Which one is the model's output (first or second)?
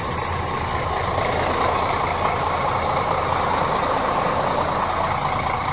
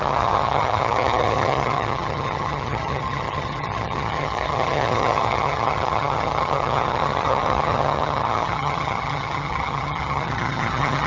second